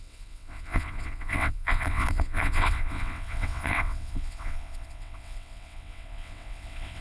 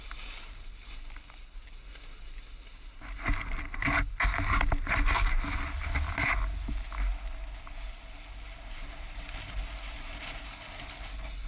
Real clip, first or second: second